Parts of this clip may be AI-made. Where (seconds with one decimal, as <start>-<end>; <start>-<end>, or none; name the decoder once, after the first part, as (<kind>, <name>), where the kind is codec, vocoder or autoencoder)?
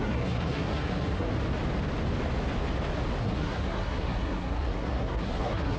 0.0-1.3 (codec, SNAC); 3.2-5.8